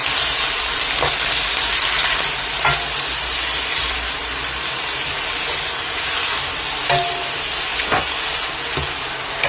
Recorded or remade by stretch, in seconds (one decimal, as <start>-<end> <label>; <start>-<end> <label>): 0.0-7.7 recorded; 7.7-8.2 remade; 8.2-9.5 recorded